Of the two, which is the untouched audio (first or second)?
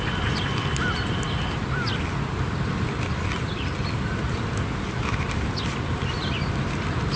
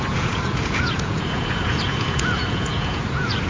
first